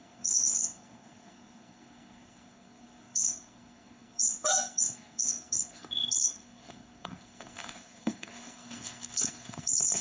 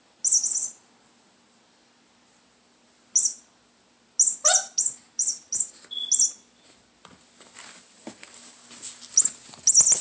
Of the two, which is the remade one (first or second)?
first